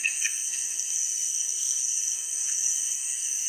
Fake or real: fake